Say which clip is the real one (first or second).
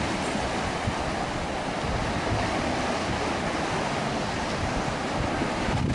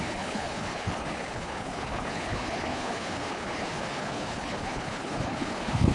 first